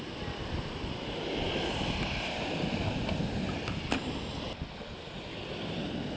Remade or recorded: recorded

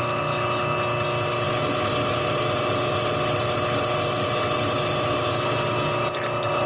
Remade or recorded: recorded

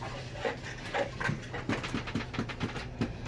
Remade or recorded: recorded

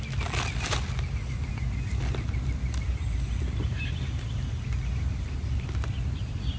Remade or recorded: recorded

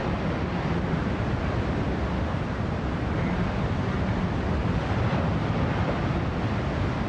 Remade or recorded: recorded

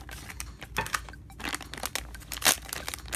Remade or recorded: recorded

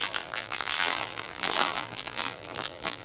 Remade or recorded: remade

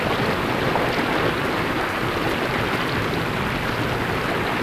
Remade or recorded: recorded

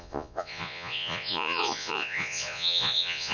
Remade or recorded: remade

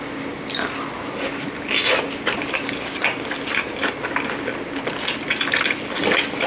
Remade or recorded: recorded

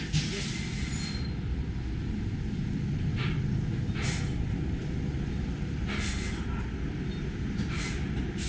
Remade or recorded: recorded